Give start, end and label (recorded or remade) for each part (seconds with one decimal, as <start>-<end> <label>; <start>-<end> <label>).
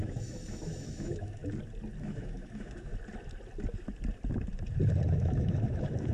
0.0-1.4 remade; 1.4-2.0 recorded; 2.0-2.9 remade; 2.9-5.1 recorded; 5.1-6.1 remade